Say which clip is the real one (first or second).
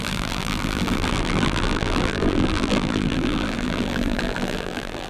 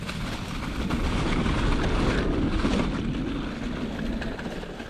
second